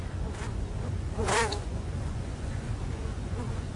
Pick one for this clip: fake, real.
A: fake